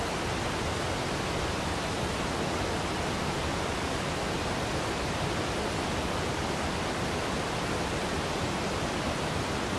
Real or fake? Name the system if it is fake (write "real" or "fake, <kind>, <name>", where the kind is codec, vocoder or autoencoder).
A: real